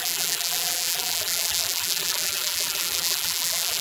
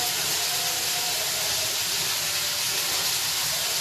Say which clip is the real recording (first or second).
second